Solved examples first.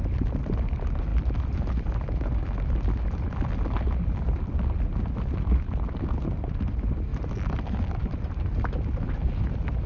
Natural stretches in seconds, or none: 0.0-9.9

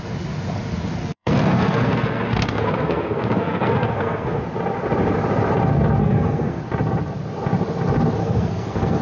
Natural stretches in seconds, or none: 0.0-1.0; 4.4-6.0; 6.6-8.2

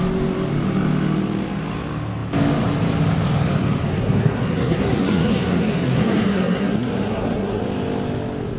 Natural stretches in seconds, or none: 0.0-3.9; 7.6-8.6

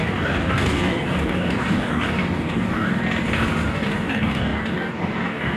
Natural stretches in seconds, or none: 3.0-3.7

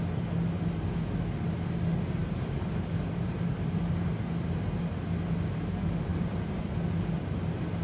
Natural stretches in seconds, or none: 0.0-2.2; 4.9-6.1; 6.6-7.8

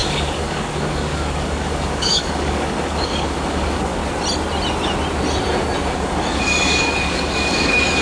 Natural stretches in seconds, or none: 4.0-5.9

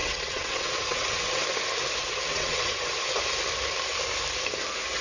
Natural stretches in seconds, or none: 1.4-2.0; 2.9-5.0